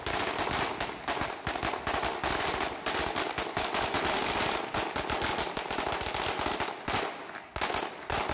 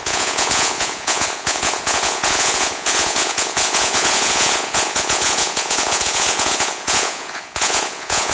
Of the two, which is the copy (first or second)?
second